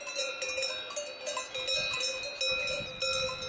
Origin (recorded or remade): recorded